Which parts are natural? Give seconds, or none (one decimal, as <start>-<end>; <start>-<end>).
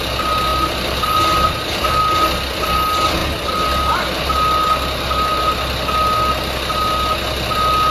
0.0-0.5; 2.0-7.9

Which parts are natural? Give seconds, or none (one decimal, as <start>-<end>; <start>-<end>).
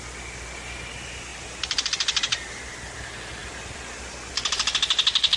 0.0-1.3; 2.2-5.4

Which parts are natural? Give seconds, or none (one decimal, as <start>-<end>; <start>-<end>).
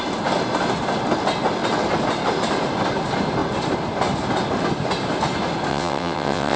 0.0-5.7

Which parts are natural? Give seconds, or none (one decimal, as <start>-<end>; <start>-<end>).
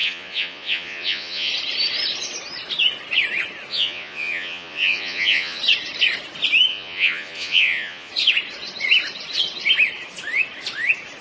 1.5-3.7; 5.6-6.7; 8.1-11.2